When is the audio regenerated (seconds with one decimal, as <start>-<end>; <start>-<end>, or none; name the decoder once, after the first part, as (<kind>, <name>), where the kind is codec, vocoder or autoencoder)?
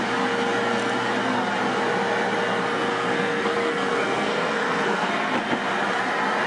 2.9-5.1 (codec, SNAC)